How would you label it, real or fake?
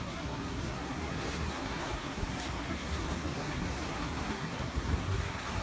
fake